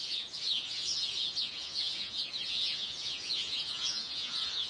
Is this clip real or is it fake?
fake